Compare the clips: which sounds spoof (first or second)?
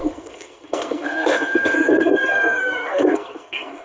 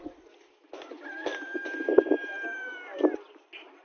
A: first